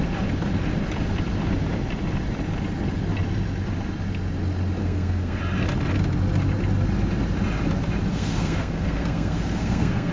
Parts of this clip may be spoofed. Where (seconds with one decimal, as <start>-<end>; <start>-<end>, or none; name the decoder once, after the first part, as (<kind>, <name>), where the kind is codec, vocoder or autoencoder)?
4.8-5.4 (codec, SNAC); 8.1-10.1